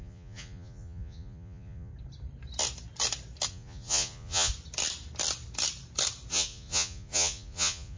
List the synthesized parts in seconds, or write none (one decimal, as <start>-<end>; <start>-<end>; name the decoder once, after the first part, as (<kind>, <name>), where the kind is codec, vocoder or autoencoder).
0.0-1.9 (vocoder, Vocos); 3.5-4.5; 6.3-8.0